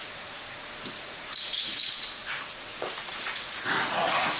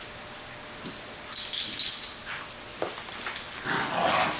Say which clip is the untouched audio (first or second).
second